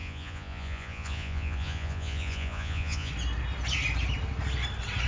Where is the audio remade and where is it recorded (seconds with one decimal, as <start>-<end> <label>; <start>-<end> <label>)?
0.0-3.1 remade; 3.1-5.1 recorded